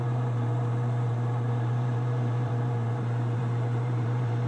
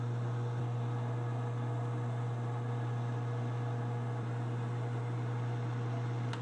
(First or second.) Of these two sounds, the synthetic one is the first